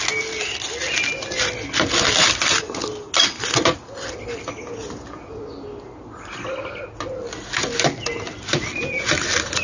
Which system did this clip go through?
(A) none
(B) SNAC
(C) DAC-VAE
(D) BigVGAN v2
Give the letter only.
A